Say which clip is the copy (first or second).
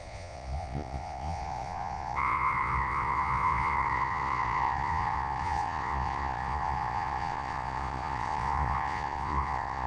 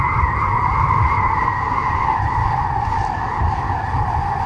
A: first